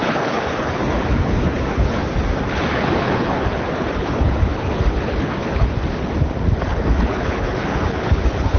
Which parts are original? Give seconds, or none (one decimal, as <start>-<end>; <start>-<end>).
2.0-2.7; 5.7-6.6